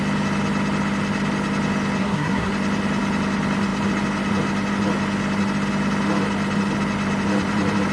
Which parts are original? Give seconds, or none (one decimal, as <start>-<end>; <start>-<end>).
0.0-2.0; 2.5-7.9